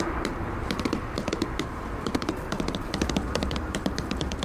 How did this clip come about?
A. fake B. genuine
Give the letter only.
A